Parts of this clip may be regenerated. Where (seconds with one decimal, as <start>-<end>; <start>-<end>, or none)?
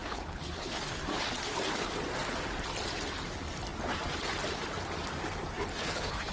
0.0-0.8; 5.7-6.3